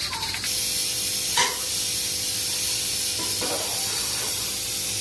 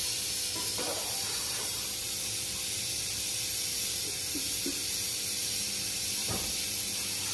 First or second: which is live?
first